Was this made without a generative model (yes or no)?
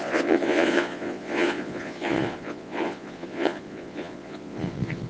no